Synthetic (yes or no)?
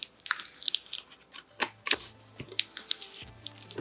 no